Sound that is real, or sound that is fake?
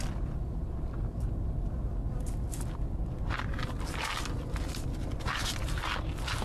real